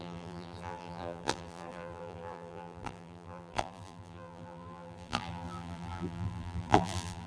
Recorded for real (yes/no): no